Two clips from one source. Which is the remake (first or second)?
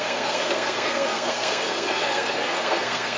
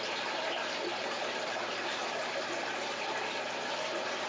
first